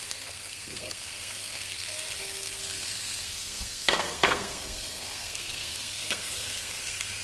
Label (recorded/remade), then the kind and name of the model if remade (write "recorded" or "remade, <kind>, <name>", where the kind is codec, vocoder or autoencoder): remade, codec, SNAC